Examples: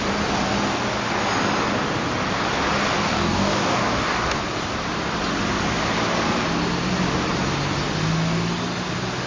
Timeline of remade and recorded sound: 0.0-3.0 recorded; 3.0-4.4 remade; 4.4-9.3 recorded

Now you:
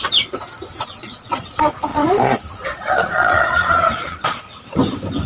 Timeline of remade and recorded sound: 0.0-1.0 recorded; 1.0-1.5 remade; 1.5-1.9 recorded; 1.9-4.4 remade; 4.4-5.3 recorded

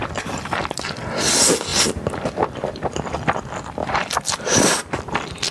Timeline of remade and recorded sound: 0.0-3.8 recorded; 3.8-4.8 remade; 4.8-5.5 recorded

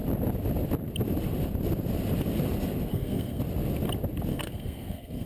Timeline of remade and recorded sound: 0.0-2.9 recorded; 2.9-3.4 remade; 3.4-4.3 recorded; 4.3-5.3 remade

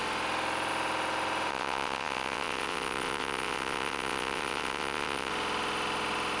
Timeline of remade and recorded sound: 0.0-1.5 recorded; 1.5-5.3 remade; 5.3-6.4 recorded